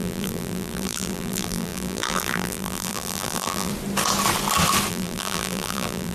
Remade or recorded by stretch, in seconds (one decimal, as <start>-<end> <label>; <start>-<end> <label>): 0.0-3.7 remade; 3.7-4.9 recorded; 4.9-6.1 remade